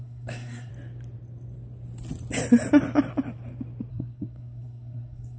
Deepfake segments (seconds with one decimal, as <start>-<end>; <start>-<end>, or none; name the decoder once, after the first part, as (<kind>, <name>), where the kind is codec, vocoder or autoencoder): 0.0-0.7 (codec, SNAC); 3.9-5.4